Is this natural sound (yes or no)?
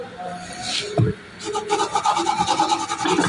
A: no